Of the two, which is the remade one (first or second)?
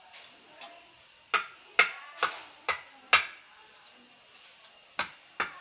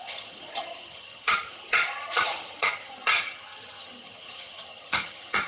second